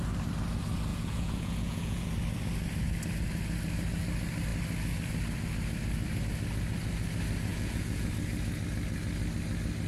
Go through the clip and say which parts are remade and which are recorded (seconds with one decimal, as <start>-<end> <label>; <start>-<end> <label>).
0.0-0.9 recorded; 0.9-2.1 remade; 2.1-7.5 recorded; 7.5-8.1 remade; 8.1-9.9 recorded